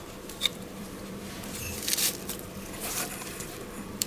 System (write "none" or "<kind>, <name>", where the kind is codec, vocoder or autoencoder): vocoder, BigVGAN v2